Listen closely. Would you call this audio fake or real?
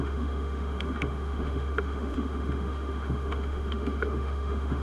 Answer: fake